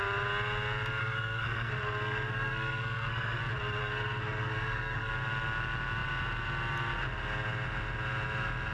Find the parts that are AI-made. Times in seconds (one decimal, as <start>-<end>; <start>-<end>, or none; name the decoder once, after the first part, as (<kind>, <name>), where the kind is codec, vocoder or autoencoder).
1.0-3.4 (codec, SNAC); 3.8-5.1